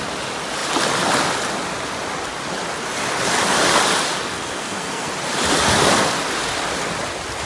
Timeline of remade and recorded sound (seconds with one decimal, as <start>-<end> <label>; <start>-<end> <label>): 0.0-4.3 recorded; 4.3-5.1 remade; 5.1-7.5 recorded